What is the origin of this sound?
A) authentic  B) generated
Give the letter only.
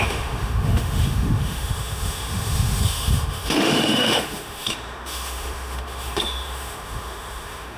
B